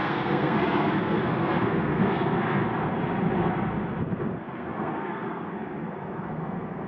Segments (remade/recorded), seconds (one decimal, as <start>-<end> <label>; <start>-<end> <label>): 0.0-2.6 remade; 2.6-4.0 recorded; 4.0-6.9 remade